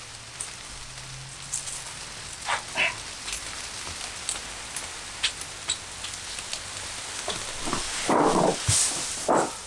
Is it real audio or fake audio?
real